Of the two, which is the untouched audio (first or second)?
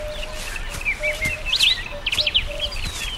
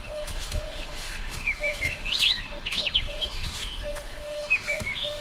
first